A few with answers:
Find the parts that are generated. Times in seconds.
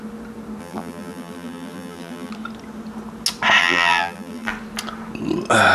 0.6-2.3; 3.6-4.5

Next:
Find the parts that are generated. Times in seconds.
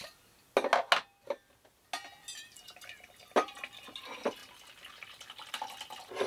none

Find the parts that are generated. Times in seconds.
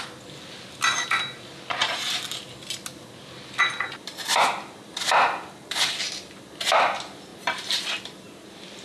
7.3-8.0